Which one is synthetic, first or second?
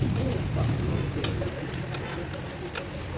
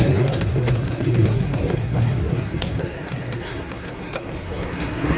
second